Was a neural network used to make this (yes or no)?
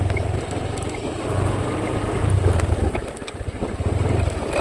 no